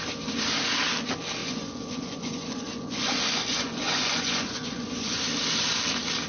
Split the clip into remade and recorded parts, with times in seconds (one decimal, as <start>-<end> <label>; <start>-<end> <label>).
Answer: 0.0-1.4 recorded; 1.4-5.2 remade; 5.2-6.3 recorded